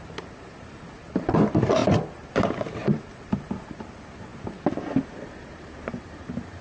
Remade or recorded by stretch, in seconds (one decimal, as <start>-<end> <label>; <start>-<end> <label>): 0.0-4.3 remade; 4.3-5.4 recorded; 5.4-6.6 remade